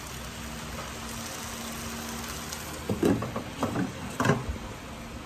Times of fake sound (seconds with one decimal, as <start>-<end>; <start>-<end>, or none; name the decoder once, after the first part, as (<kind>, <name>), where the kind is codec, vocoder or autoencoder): 3.2-4.2 (vocoder, BigVGAN v2)